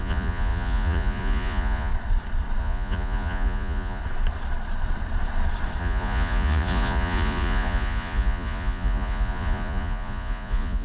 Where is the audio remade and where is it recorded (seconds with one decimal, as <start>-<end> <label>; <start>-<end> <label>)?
0.0-1.9 remade; 1.9-2.6 recorded; 2.6-4.0 remade; 4.0-5.8 recorded; 5.8-10.8 remade